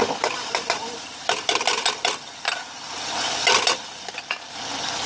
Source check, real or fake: real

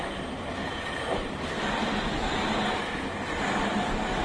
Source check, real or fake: real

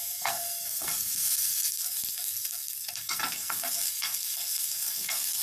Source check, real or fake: fake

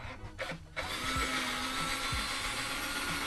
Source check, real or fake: real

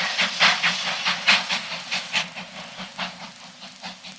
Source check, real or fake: real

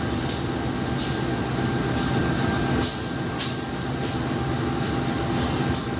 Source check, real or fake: real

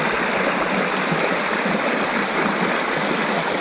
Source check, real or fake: real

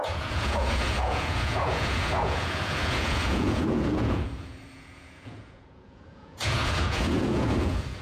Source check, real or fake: fake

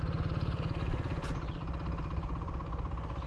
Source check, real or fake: real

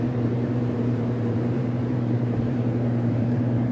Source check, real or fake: fake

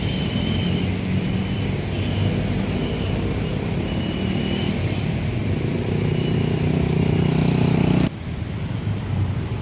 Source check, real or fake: real